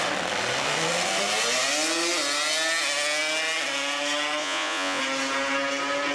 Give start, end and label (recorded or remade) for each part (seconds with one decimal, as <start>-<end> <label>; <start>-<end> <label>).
0.0-4.4 recorded; 4.4-5.0 remade; 5.0-6.1 recorded